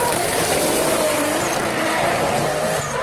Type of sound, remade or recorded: remade